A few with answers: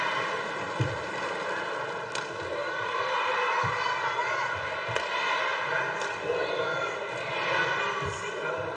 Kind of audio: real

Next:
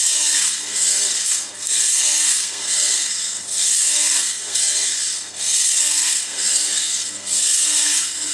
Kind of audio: fake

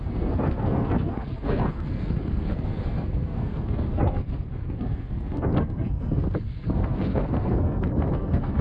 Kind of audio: fake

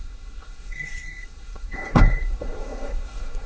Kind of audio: fake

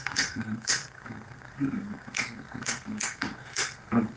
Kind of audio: fake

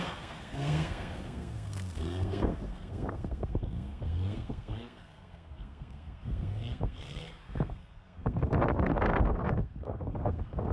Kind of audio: fake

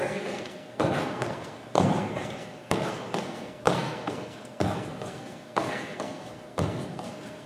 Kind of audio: fake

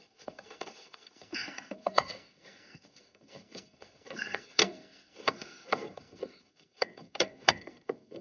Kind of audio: fake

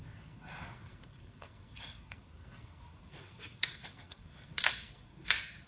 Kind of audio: fake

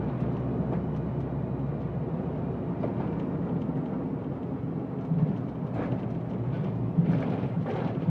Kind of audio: real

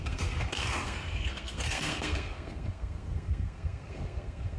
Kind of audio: fake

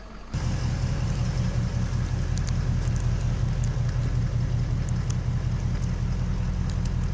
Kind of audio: real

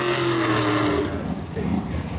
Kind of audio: real